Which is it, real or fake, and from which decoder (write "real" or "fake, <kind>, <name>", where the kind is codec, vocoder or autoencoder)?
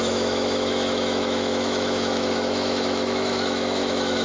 fake, autoencoder, DAC-VAE